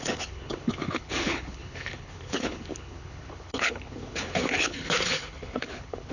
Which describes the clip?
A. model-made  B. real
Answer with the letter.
A